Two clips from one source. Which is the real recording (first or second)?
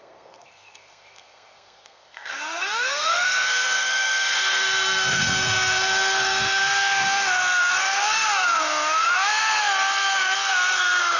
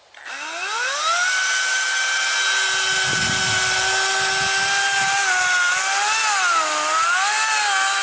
second